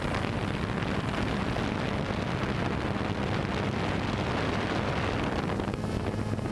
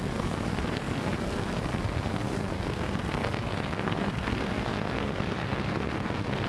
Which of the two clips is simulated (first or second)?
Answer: second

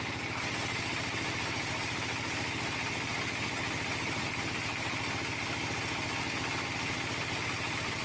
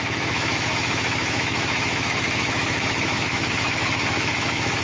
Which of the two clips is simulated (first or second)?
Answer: second